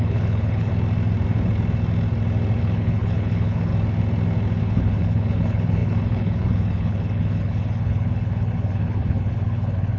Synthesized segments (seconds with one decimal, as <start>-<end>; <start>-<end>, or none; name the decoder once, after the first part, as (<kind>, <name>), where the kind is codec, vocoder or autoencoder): 0.0-0.7 (codec, HILCodec); 2.6-3.7; 4.6-10.0